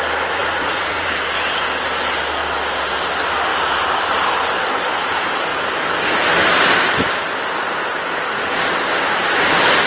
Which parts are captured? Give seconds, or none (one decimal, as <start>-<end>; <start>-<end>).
0.0-0.4; 1.1-9.9